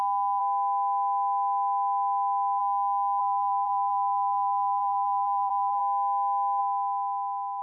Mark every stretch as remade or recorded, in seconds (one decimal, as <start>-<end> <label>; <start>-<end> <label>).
0.0-3.2 recorded; 3.2-5.8 remade; 5.8-7.6 recorded